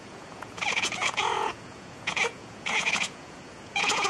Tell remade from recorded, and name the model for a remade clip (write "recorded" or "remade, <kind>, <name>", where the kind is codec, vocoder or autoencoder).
remade, vocoder, Vocos